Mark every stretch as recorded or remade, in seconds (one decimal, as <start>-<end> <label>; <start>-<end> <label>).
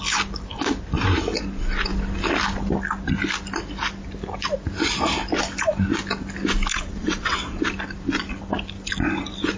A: 0.0-6.7 recorded; 6.7-7.6 remade; 7.6-9.6 recorded